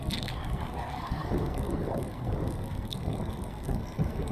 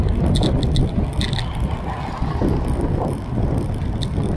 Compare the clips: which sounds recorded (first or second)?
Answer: second